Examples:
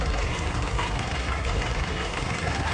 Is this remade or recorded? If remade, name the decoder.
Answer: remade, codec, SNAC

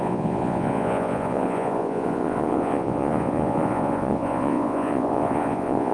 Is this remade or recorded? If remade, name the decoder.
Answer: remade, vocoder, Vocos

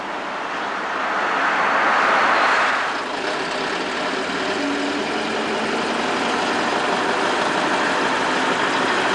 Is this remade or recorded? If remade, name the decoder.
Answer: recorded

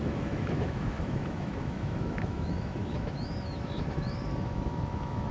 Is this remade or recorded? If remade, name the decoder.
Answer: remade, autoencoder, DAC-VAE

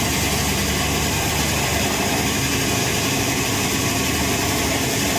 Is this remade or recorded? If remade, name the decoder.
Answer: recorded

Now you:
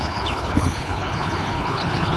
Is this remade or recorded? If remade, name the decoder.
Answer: remade, codec, HILCodec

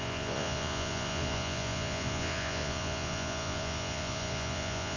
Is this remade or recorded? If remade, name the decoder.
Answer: remade, vocoder, Vocos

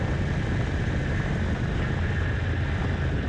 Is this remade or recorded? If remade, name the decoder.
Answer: recorded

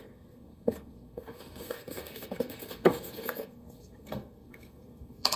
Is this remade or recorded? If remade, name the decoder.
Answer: remade, codec, SNAC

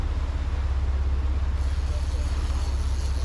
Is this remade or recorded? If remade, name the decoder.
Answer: recorded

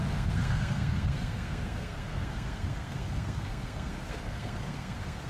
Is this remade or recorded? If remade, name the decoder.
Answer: remade, codec, SNAC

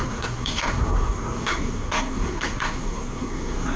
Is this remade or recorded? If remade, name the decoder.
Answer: remade, codec, SNAC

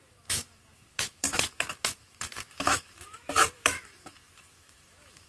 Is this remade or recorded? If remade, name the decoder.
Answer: remade, autoencoder, DAC-VAE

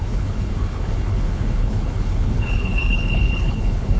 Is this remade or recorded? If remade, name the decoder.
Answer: remade, codec, HILCodec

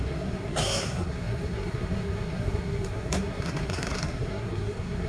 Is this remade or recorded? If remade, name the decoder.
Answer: remade, codec, SNAC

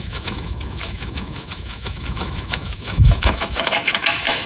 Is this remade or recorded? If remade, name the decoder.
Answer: remade, autoencoder, DAC-VAE